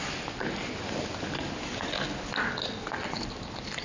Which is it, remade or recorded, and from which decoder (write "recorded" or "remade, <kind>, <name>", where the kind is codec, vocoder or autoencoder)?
recorded